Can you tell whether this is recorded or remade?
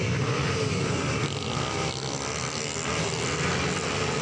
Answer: recorded